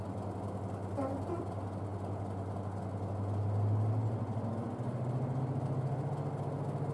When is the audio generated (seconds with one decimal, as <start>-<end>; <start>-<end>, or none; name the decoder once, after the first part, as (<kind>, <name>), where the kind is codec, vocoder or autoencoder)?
0.8-1.4 (vocoder, BigVGAN v2)